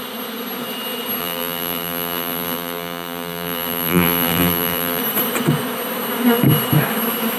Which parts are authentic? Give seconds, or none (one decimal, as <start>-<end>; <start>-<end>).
0.0-1.2; 5.0-7.4